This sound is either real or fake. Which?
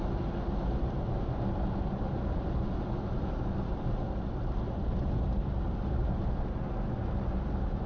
real